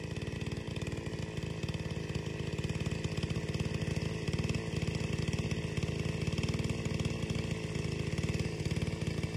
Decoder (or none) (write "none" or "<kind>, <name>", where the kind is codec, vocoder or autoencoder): none